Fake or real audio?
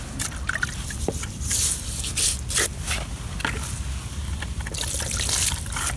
real